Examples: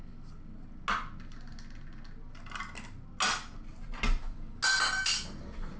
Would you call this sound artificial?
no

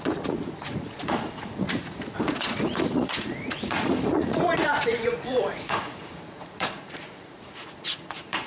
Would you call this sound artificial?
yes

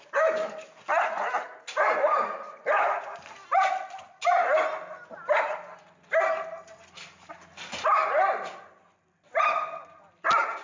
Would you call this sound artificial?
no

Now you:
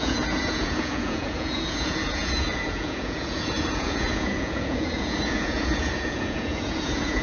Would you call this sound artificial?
yes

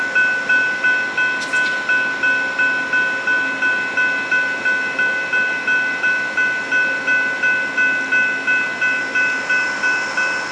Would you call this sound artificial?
no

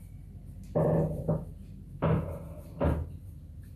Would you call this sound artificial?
no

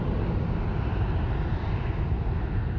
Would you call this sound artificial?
no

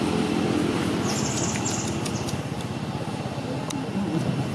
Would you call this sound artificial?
no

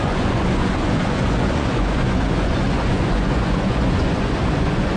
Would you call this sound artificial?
yes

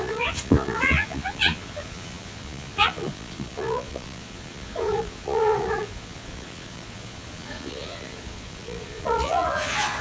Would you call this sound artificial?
yes